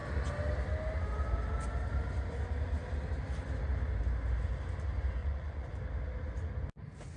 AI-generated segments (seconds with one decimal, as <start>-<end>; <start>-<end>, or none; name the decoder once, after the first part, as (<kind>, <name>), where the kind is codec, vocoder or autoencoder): 5.2-5.7 (vocoder, Vocos)